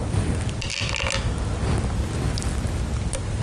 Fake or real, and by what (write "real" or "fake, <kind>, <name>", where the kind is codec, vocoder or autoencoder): real